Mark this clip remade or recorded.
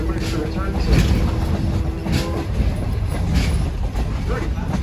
recorded